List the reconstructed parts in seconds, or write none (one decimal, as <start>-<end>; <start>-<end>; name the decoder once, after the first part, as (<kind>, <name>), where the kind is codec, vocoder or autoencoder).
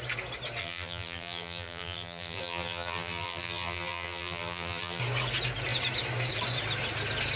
0.6-5.0 (vocoder, BigVGAN v2)